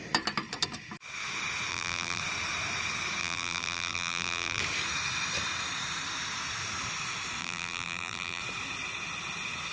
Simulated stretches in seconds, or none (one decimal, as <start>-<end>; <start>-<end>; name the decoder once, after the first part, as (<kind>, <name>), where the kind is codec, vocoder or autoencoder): 1.7-2.2 (vocoder, BigVGAN v2); 3.2-4.6; 7.4-8.4